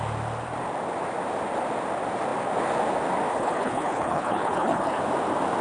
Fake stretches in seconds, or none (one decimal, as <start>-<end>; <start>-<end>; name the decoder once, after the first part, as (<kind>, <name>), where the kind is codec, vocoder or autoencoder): 3.3-5.0 (codec, HILCodec)